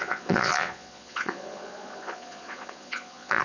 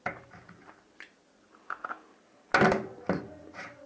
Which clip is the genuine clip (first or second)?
second